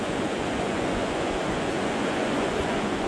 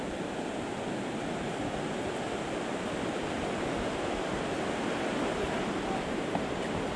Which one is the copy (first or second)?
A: first